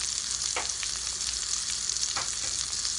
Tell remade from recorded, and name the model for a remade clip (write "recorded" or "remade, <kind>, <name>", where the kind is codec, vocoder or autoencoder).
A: recorded